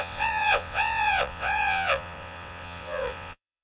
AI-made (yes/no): yes